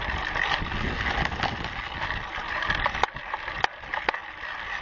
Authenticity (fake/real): real